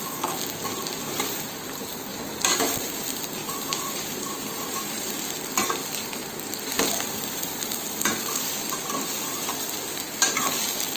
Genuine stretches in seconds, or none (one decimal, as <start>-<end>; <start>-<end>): 0.0-2.1; 2.6-11.0